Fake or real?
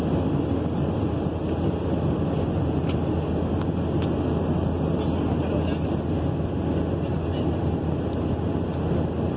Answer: real